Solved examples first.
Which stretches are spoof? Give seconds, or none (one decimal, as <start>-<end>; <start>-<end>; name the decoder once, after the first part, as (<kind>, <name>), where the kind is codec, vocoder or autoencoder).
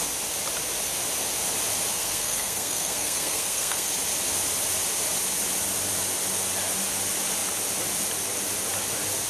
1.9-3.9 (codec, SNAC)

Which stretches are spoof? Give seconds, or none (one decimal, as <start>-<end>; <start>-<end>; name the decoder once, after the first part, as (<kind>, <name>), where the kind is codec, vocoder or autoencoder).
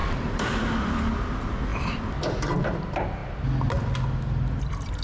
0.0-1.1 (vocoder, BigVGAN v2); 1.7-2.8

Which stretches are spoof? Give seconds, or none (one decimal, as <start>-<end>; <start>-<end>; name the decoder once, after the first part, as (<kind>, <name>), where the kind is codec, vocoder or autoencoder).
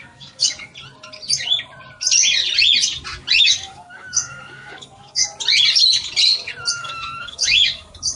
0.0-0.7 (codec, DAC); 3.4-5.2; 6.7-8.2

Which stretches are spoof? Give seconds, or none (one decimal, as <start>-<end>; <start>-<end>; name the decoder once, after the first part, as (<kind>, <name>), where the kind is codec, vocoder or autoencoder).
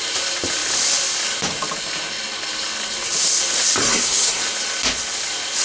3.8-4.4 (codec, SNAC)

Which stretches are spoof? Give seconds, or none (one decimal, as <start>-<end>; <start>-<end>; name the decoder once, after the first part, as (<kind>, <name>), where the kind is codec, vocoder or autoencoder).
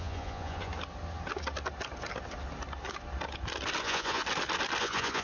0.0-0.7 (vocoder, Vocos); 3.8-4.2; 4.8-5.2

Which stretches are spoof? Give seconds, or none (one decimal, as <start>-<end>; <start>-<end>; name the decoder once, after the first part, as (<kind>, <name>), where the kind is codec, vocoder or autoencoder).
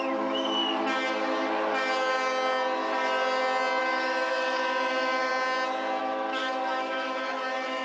0.0-0.6 (autoencoder, DAC-VAE); 3.8-5.3; 6.0-7.8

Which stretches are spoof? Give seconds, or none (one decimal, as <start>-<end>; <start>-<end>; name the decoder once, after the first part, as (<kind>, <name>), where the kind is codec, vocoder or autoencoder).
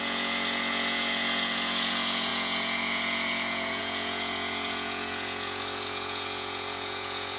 0.0-7.4 (vocoder, Vocos)